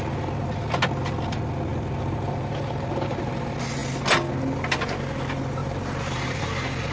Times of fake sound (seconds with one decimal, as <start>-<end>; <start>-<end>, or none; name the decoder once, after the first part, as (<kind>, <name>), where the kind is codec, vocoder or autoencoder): 1.7-3.3 (vocoder, BigVGAN v2); 5.6-6.4